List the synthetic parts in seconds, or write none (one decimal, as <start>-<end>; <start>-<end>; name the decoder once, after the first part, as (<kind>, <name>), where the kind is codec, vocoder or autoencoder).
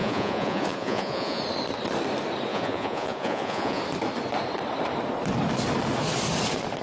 0.0-1.4 (vocoder, Vocos); 2.5-3.8